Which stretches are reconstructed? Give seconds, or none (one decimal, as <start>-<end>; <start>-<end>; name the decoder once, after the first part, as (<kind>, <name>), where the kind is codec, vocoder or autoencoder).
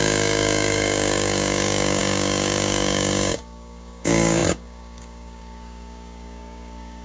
0.0-7.0 (codec, DAC)